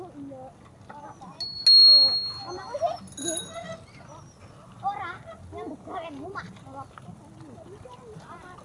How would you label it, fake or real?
real